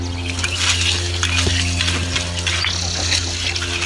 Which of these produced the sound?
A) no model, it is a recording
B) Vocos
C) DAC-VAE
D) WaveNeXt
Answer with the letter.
A